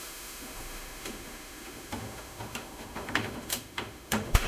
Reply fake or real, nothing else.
fake